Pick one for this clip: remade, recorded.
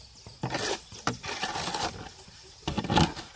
recorded